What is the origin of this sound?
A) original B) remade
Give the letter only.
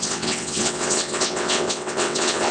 B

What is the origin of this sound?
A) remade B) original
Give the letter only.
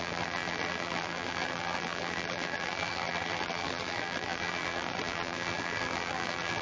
A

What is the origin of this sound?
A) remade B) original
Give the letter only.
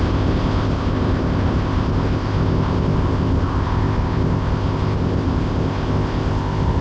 A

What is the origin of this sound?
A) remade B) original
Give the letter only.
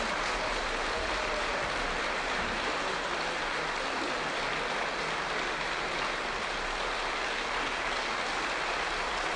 B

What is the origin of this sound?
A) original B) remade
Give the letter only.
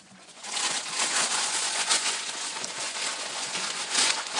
B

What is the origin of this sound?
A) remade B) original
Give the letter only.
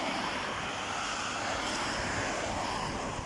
B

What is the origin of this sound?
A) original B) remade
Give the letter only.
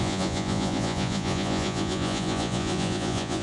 B